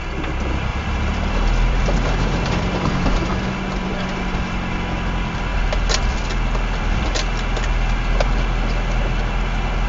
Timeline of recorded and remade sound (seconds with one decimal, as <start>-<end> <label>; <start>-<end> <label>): 0.0-0.7 recorded; 0.7-1.9 remade; 1.9-9.9 recorded